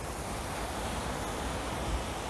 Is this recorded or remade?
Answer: recorded